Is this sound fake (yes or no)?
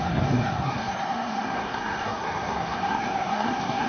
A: yes